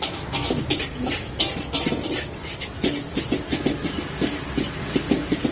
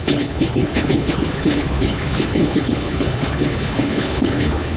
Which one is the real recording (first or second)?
first